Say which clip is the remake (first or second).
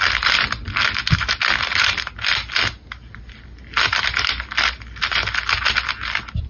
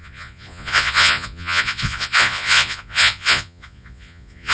second